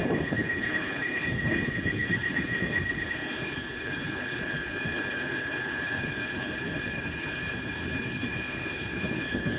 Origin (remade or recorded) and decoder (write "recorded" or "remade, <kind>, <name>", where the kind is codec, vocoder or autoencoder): remade, codec, HILCodec